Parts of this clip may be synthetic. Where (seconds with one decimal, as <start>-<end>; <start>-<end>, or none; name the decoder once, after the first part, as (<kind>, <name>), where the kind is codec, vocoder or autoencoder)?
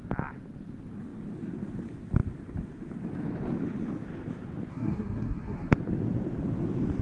4.7-5.7 (codec, SNAC)